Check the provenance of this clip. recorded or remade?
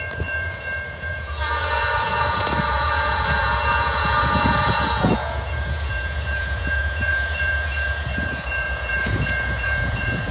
remade